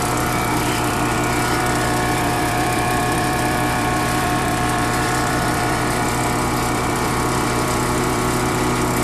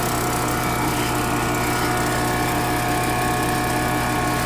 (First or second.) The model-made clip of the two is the first